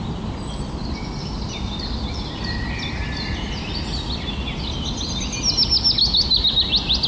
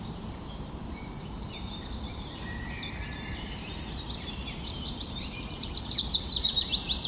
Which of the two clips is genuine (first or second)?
first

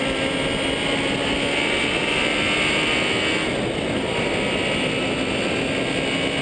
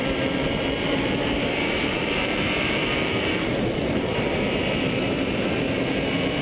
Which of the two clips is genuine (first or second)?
first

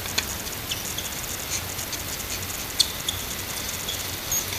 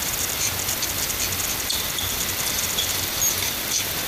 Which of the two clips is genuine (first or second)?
first